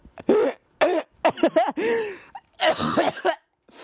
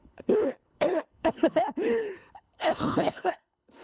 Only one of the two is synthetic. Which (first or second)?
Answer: second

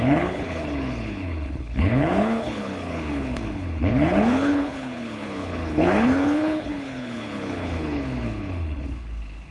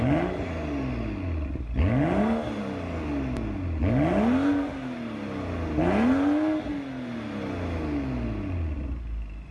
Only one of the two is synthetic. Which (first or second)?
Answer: first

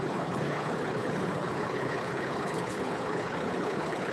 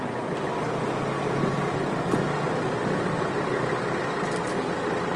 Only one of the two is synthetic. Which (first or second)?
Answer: first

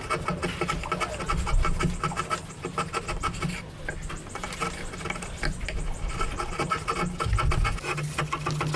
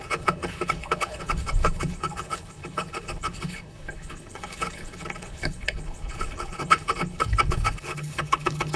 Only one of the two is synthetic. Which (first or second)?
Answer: second